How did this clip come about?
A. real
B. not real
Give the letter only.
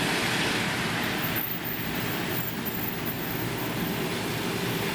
A